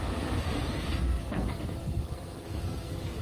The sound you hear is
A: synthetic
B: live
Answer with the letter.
A